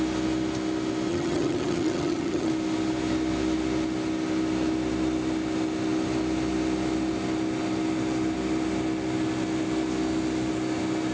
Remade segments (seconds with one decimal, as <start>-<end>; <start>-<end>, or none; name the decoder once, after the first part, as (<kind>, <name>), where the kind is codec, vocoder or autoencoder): 1.1-2.5 (vocoder, HiFi-GAN)